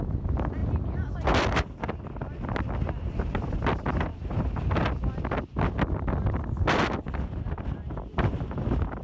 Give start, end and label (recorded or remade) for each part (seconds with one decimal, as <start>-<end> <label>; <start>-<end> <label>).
0.0-9.0 recorded